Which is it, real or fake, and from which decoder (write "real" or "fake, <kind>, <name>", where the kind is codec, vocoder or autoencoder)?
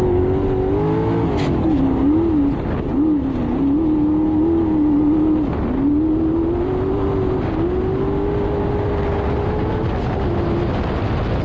real